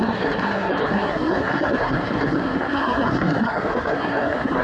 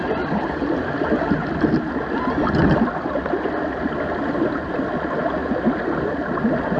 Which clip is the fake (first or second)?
first